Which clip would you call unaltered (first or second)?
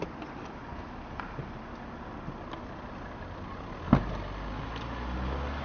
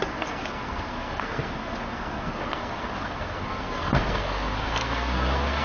first